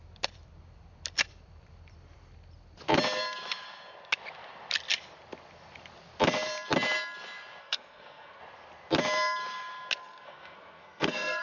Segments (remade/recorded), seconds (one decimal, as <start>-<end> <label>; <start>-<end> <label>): 0.0-7.6 recorded; 7.6-8.4 remade; 8.4-10.0 recorded; 10.0-11.4 remade